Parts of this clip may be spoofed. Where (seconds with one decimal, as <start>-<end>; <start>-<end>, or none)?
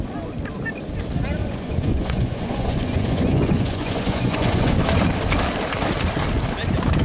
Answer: 1.4-4.7